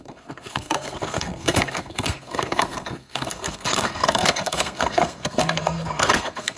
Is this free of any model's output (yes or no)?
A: no